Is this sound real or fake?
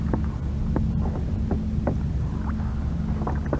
real